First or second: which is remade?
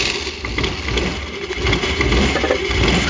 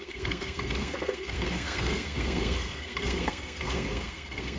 second